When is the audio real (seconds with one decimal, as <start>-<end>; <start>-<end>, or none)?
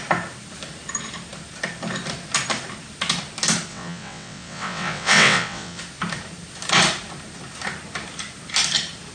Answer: 0.0-3.7; 5.8-9.1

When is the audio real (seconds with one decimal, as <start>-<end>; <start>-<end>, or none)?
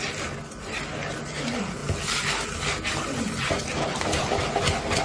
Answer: 0.0-5.0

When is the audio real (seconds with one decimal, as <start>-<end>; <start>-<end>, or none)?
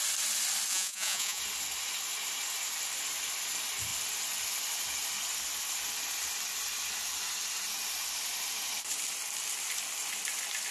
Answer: 0.0-0.7; 1.4-10.7